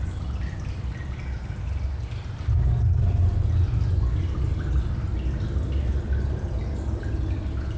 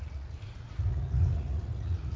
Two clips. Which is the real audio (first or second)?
first